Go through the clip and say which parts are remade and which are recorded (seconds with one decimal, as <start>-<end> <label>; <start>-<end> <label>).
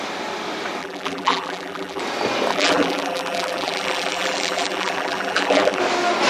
0.0-0.8 recorded; 0.8-2.0 remade; 2.0-2.5 recorded; 2.5-5.8 remade; 5.8-6.3 recorded